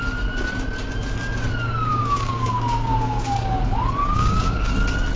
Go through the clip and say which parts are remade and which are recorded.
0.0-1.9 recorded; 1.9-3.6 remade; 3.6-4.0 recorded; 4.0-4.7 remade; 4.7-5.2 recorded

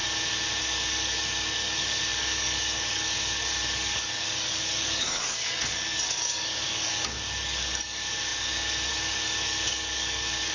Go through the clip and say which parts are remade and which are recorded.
0.0-0.6 recorded; 0.6-10.5 remade

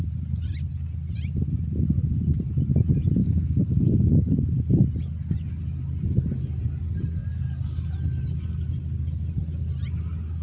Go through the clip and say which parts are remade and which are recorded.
0.0-3.2 recorded; 3.2-4.1 remade; 4.1-10.4 recorded

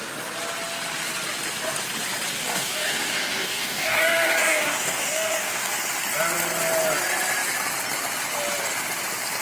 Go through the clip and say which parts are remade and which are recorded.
0.0-2.3 recorded; 2.3-5.7 remade; 5.7-9.4 recorded

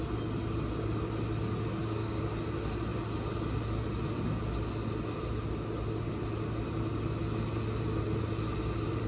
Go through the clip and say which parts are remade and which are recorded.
0.0-1.8 recorded; 1.8-2.3 remade; 2.3-9.1 recorded

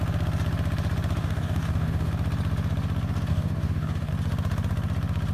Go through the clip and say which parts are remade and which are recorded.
0.0-1.2 recorded; 1.2-2.1 remade; 2.1-3.3 recorded; 3.3-4.1 remade; 4.1-5.3 recorded

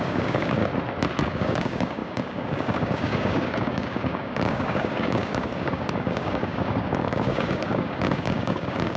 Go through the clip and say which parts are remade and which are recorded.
0.0-0.6 remade; 0.6-1.2 recorded; 1.2-9.0 remade

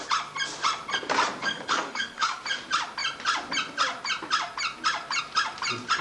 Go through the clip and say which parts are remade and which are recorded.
0.0-1.4 recorded; 1.4-2.4 remade; 2.4-6.0 recorded